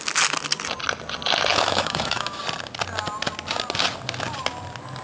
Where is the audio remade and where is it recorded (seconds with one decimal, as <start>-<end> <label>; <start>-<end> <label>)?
0.0-1.5 recorded; 1.5-2.4 remade; 2.4-5.0 recorded